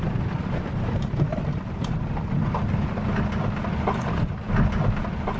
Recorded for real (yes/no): yes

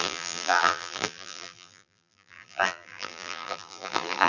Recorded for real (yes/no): no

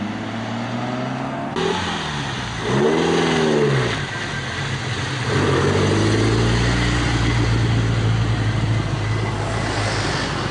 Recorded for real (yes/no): yes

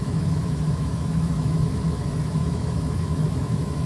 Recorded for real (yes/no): no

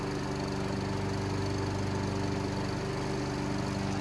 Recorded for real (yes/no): yes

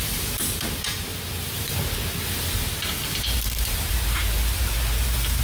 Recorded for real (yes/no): no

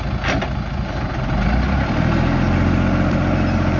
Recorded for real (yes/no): yes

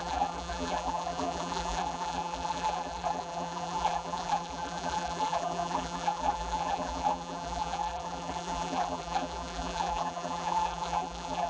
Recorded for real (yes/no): no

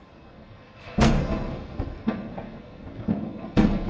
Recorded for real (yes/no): no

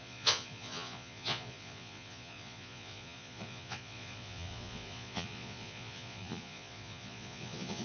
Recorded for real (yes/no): no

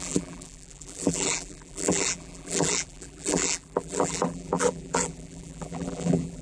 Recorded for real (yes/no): no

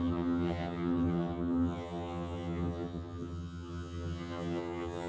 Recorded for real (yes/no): no